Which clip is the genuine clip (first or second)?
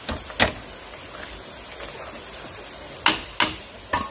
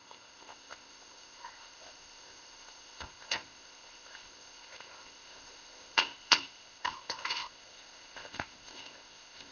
first